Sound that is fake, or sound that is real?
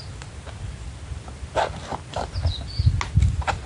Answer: real